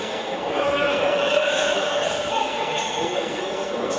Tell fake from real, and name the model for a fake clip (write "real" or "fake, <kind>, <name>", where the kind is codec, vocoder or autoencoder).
fake, codec, SNAC